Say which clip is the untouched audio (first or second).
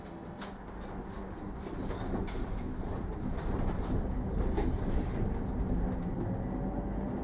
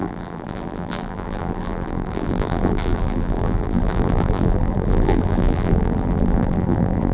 first